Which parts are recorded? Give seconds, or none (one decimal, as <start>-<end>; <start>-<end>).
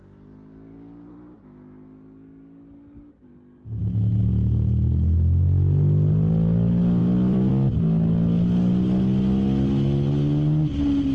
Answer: 0.0-3.8; 4.3-7.0; 7.5-11.1